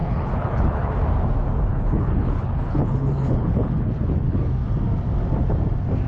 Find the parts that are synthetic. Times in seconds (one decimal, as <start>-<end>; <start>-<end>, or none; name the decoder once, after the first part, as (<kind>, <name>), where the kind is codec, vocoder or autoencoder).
0.0-0.9 (codec, HILCodec); 1.7-4.4